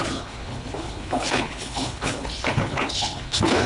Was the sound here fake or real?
fake